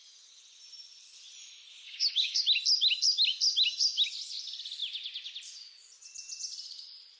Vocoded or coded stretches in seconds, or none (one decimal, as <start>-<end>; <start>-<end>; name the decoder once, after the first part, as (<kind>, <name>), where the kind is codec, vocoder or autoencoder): 1.7-2.4 (codec, DAC)